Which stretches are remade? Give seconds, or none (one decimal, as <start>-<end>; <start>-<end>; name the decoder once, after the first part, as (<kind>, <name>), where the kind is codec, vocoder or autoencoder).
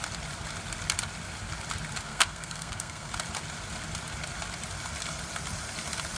2.1-3.1 (codec, SNAC)